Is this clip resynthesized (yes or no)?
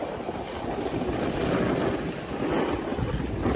no